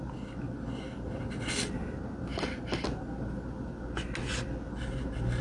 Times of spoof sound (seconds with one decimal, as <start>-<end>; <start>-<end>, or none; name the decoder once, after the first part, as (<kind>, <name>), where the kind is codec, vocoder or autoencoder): none